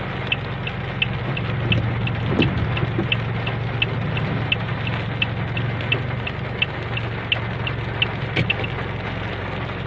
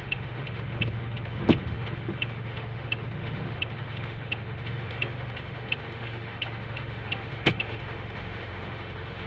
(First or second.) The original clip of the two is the first